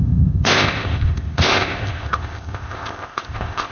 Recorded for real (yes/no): no